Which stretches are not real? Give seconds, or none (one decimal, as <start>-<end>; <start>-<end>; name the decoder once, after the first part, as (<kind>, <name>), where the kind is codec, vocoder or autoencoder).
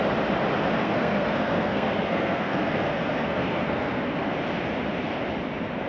0.8-4.3 (codec, SNAC)